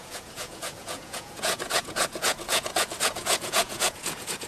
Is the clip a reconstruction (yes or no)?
yes